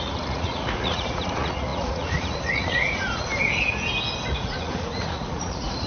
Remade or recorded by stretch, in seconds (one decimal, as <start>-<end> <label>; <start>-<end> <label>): 0.0-3.3 remade; 3.3-4.3 recorded; 4.3-5.9 remade